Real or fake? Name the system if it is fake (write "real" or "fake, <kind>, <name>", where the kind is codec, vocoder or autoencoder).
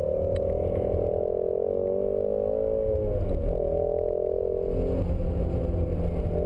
real